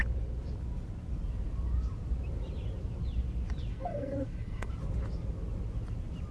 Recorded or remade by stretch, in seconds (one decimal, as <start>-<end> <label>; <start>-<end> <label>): 0.0-3.7 recorded; 3.7-4.7 remade; 4.7-6.3 recorded